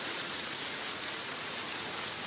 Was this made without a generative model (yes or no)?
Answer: no